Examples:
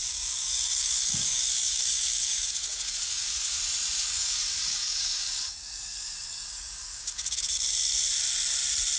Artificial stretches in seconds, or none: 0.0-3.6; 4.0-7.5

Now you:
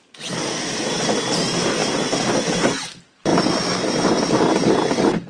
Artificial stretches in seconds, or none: none